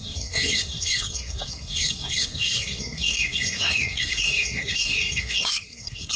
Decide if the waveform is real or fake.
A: fake